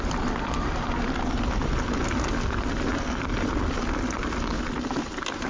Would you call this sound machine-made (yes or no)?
no